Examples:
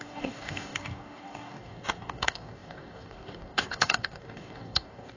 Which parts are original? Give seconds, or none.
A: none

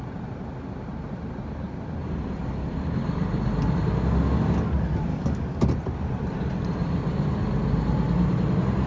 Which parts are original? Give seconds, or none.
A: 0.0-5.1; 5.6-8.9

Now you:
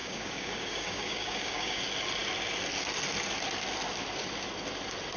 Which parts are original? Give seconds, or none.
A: 1.8-5.2